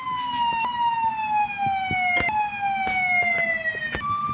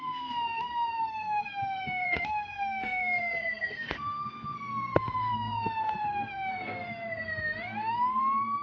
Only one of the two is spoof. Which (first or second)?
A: second